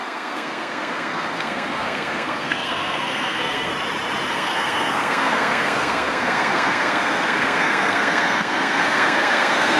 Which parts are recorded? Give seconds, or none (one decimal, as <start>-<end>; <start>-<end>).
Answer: 3.7-4.3

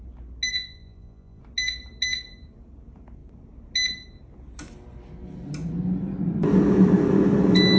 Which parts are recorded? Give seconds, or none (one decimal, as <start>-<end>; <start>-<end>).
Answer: 0.0-0.5; 1.4-7.8

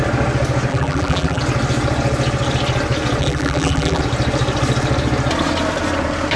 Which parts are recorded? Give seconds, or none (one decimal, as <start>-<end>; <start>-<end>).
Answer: 0.0-0.7; 1.4-3.2; 4.0-6.4

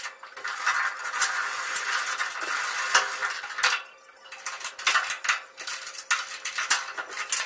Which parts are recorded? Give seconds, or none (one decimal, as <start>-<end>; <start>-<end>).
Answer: 0.0-1.0; 2.3-7.5

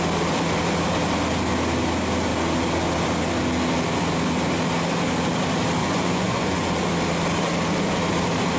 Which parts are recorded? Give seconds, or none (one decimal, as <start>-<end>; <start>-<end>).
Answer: 0.0-5.8; 6.8-8.6

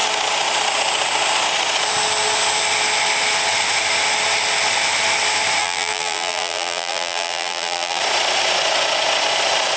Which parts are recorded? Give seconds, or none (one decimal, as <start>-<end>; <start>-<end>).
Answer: 0.0-5.6; 8.0-9.8

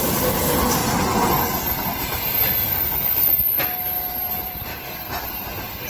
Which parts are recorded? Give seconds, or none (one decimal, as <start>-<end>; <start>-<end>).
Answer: 0.8-4.3; 4.7-5.9

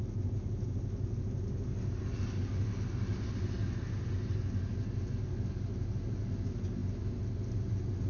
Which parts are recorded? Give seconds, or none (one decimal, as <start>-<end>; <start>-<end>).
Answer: 0.0-8.1